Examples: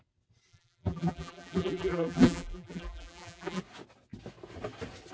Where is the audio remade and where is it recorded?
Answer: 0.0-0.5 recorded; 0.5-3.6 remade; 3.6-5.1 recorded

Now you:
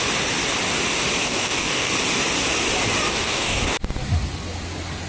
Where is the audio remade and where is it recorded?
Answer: 0.0-1.2 recorded; 1.2-1.9 remade; 1.9-3.1 recorded; 3.1-3.8 remade; 3.8-5.1 recorded

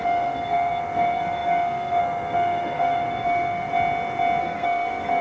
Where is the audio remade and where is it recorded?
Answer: 0.0-3.7 remade; 3.7-4.4 recorded; 4.4-5.2 remade

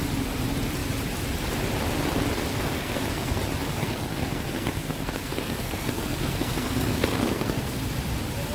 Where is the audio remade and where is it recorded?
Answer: 0.0-2.5 recorded; 2.5-3.4 remade; 3.4-3.8 recorded; 3.8-7.8 remade; 7.8-8.5 recorded

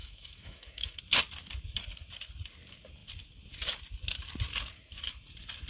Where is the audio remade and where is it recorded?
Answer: 0.0-1.0 remade; 1.0-5.7 recorded

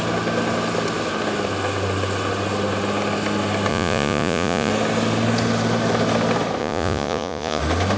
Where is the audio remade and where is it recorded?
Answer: 0.0-3.7 recorded; 3.7-4.7 remade; 4.7-6.6 recorded; 6.6-7.6 remade; 7.6-8.0 recorded